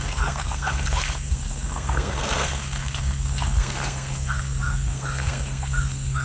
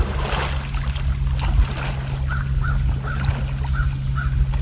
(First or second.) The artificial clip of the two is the first